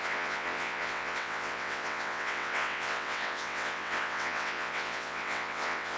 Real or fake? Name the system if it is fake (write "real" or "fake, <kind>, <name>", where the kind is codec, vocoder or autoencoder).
fake, vocoder, WaveNeXt